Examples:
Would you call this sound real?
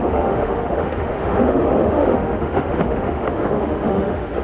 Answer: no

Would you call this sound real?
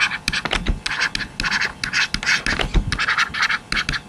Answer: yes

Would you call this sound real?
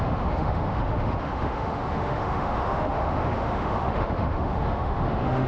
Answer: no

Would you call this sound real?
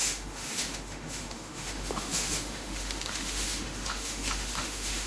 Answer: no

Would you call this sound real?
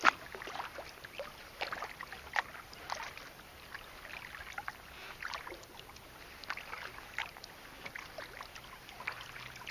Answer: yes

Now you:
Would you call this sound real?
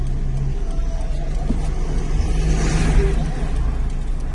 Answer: yes